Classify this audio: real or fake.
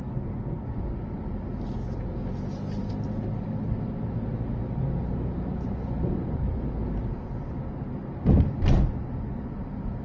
real